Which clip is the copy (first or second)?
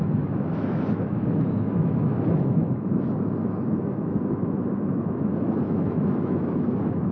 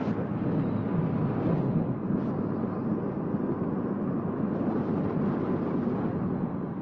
first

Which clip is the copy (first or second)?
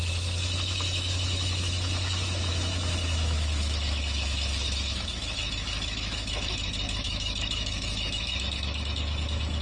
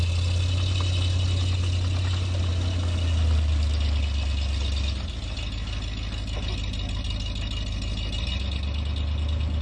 first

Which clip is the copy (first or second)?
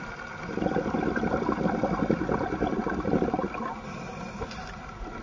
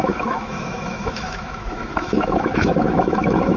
second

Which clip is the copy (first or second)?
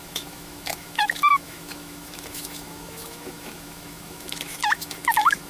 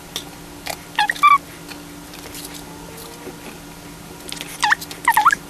first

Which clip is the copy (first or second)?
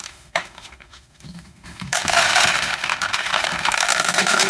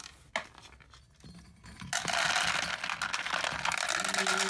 first